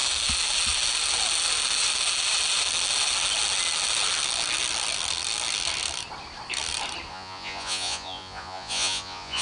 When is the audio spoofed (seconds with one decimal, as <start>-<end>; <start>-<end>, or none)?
7.1-9.4